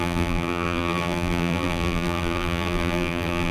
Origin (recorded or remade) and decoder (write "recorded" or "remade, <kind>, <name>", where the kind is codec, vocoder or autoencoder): remade, vocoder, BigVGAN v2